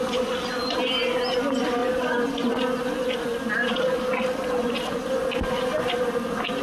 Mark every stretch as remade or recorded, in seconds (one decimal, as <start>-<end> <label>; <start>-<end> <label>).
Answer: 0.0-6.6 recorded